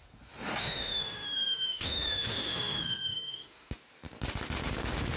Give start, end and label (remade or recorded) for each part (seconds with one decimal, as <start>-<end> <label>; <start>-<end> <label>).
0.0-0.6 recorded; 0.6-3.7 remade; 3.7-5.2 recorded